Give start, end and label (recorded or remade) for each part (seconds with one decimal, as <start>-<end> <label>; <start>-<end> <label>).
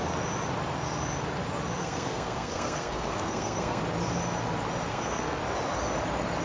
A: 0.0-1.8 recorded; 1.8-3.8 remade; 3.8-4.9 recorded; 4.9-5.4 remade; 5.4-6.4 recorded